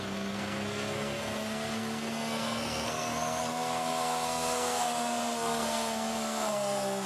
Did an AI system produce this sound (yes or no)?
yes